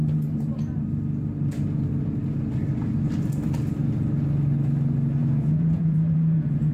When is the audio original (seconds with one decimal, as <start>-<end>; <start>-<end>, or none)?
0.0-5.2